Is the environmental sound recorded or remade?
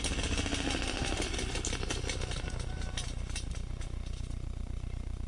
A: recorded